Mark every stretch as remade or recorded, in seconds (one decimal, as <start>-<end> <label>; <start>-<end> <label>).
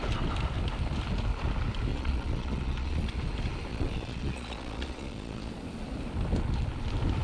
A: 0.0-1.9 recorded; 1.9-3.1 remade; 3.1-3.7 recorded; 3.7-5.5 remade; 5.5-7.2 recorded